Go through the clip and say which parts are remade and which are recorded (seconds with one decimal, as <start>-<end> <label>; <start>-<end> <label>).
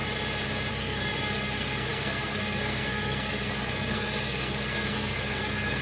0.0-0.7 recorded; 0.7-5.8 remade